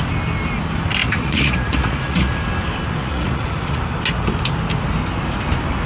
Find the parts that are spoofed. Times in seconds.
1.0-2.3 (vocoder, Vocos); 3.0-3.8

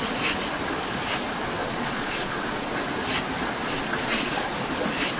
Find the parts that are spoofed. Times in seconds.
1.6-2.8 (vocoder, Vocos); 3.6-4.5

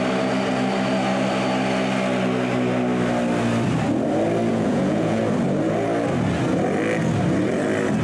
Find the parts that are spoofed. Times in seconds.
4.5-5.2 (vocoder, Vocos)